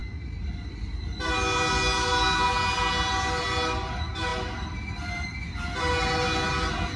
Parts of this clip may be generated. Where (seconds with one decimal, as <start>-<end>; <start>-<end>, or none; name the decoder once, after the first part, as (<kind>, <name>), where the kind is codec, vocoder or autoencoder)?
none